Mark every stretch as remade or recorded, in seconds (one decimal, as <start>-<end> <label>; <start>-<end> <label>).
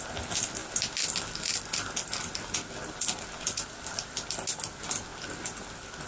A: 0.0-6.1 recorded